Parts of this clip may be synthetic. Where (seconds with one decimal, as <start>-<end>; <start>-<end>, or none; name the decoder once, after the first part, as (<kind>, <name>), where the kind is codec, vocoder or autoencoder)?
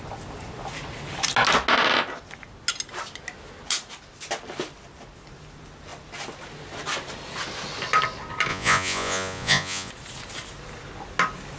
8.5-9.9 (vocoder, Vocos)